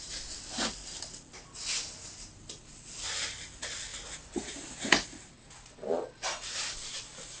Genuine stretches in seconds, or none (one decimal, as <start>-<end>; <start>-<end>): 0.0-7.4